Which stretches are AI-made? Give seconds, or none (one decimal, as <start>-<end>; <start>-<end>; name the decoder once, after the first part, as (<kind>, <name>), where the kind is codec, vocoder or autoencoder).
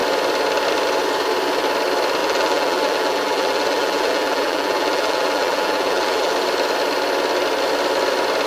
2.2-6.3 (vocoder, BigVGAN v2)